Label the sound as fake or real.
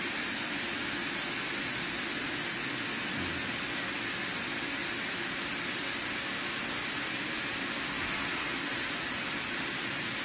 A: real